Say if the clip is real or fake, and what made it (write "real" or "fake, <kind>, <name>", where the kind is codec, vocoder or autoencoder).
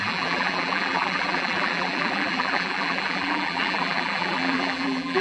fake, vocoder, BigVGAN v2